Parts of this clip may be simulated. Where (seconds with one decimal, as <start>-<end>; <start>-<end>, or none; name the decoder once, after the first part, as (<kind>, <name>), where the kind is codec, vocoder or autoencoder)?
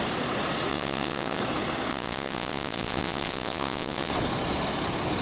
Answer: 0.7-1.4 (vocoder, WaveNeXt); 1.9-4.1